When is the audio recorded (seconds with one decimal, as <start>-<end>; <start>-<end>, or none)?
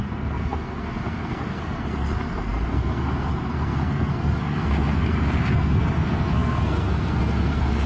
none